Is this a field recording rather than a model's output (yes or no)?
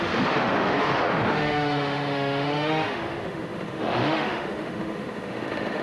no